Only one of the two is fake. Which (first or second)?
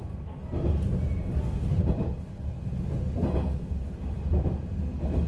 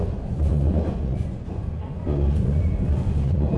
second